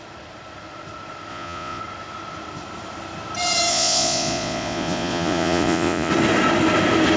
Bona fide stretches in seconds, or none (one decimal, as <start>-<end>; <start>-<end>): 0.0-1.3; 1.8-3.7; 6.1-7.2